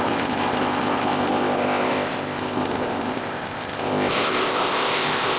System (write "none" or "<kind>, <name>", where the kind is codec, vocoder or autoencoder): codec, ZipCodec